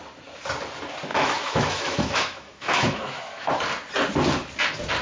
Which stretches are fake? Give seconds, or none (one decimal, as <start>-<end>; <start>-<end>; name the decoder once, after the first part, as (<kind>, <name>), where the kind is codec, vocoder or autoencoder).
1.1-3.5 (autoencoder, DAC-VAE)